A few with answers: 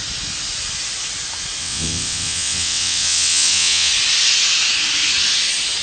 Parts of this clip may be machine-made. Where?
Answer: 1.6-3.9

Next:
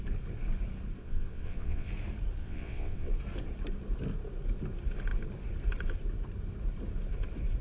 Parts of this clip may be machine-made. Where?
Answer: 1.0-1.9; 2.4-3.1

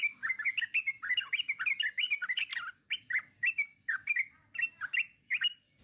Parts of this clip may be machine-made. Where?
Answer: none

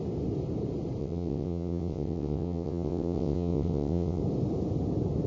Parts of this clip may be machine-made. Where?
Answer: 1.0-4.2

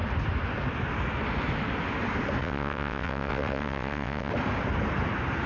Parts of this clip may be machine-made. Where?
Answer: 2.4-4.3